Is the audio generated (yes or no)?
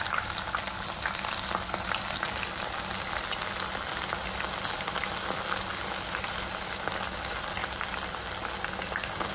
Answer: no